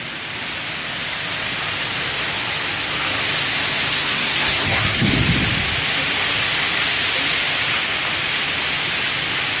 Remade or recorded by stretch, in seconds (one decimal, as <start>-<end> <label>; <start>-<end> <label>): 0.0-4.0 recorded; 4.0-5.1 remade; 5.1-9.6 recorded